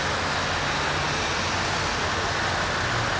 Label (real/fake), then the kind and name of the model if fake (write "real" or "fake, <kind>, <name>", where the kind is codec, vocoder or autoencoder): real